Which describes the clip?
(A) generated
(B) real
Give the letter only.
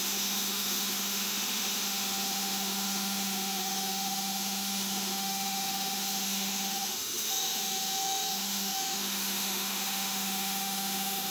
A